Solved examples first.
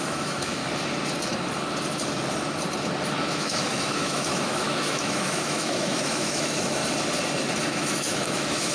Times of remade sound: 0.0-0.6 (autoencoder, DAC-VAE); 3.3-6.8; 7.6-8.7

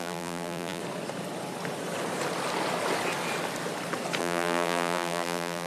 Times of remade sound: 0.0-0.8 (vocoder, BigVGAN v2); 4.2-5.7

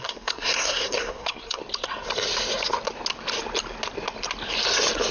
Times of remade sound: 0.0-1.6 (codec, SNAC)

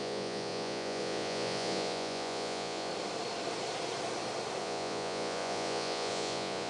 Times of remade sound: 0.0-2.9 (vocoder, Vocos); 4.6-6.7